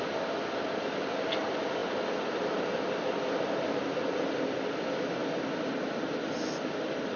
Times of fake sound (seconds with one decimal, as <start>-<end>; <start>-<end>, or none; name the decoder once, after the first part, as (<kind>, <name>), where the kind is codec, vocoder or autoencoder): 0.0-1.8 (vocoder, BigVGAN v2); 2.6-5.2; 6.7-7.2